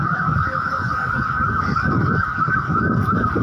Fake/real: fake